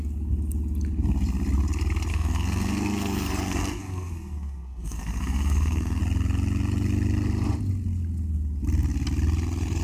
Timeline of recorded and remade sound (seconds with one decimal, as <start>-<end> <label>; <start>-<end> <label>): 0.0-2.1 recorded; 2.1-6.0 remade; 6.0-9.8 recorded